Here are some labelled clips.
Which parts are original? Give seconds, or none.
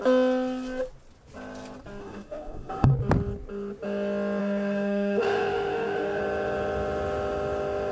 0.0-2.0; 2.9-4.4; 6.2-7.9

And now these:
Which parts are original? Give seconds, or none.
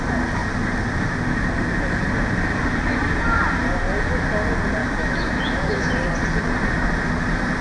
0.0-4.8; 5.9-7.6